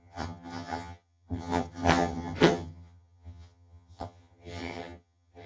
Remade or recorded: remade